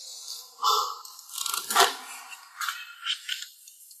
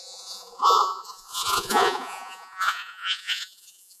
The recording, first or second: first